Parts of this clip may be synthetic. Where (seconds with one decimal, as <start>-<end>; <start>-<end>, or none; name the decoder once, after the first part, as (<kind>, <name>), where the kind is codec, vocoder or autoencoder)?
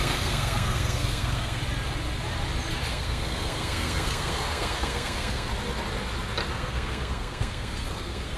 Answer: 0.0-1.6 (codec, SNAC); 2.9-5.5; 6.5-8.4